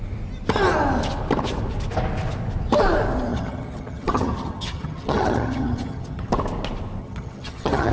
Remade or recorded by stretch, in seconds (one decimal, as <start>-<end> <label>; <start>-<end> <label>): 0.0-3.3 recorded; 3.3-6.3 remade; 6.3-7.0 recorded; 7.0-7.9 remade